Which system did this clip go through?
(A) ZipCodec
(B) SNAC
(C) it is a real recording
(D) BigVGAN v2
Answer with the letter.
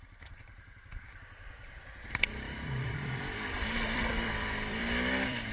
D